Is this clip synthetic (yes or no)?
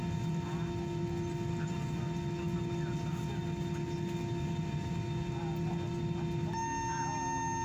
no